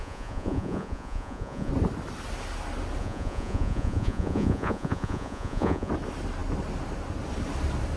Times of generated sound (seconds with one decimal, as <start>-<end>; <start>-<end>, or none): 0.0-1.7; 3.0-5.9